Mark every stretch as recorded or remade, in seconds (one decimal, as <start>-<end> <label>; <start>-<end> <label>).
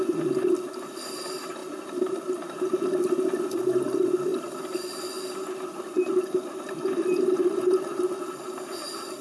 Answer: 0.0-7.4 recorded; 7.4-8.2 remade; 8.2-9.2 recorded